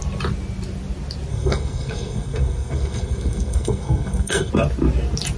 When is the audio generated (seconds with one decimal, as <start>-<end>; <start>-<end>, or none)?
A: 1.3-4.5